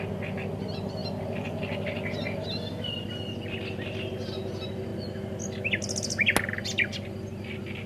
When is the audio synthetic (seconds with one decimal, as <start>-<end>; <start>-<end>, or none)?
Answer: 1.0-3.1